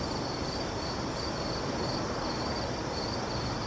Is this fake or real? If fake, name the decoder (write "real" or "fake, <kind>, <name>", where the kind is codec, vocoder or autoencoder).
real